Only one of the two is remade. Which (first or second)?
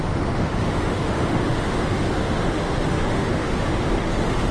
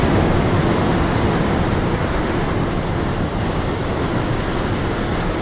first